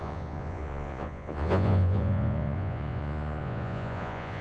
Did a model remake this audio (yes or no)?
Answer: yes